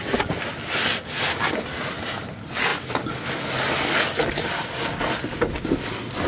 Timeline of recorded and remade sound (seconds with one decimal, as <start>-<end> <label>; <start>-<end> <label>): 0.0-6.3 recorded